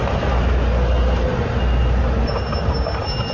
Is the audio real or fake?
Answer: real